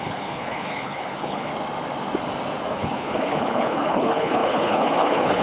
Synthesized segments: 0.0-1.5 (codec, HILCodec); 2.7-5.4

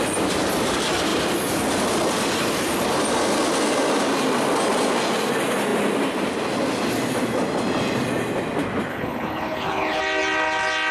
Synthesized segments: 8.9-10.0 (codec, HILCodec)

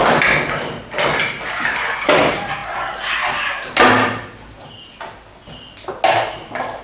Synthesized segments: none

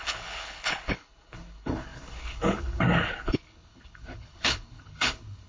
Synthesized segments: 0.0-5.5 (codec, HILCodec)

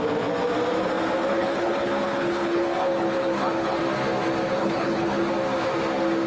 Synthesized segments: 1.3-3.8 (codec, HILCodec); 4.6-5.3

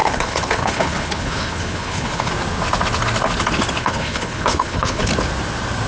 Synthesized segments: 0.0-2.3 (codec, HILCodec); 3.8-5.1